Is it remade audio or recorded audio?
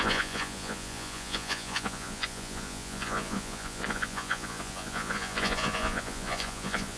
remade